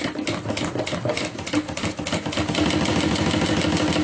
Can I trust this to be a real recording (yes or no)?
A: yes